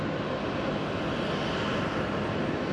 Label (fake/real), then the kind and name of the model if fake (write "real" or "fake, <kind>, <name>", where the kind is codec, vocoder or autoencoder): real